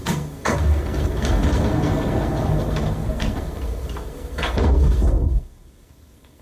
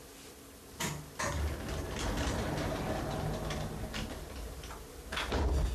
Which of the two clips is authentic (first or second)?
second